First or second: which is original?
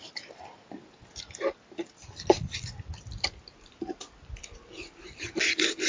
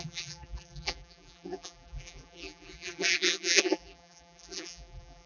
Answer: first